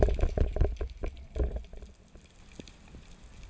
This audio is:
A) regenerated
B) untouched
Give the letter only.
B